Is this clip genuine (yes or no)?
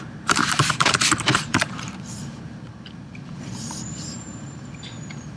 no